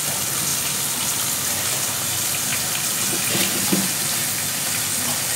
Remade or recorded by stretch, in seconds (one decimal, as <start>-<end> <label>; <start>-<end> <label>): 0.0-5.4 recorded